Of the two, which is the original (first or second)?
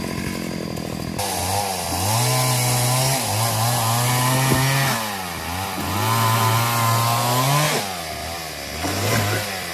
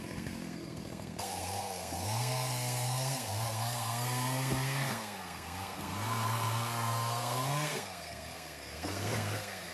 first